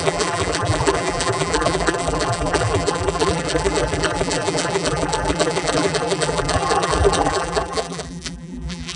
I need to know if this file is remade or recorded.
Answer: remade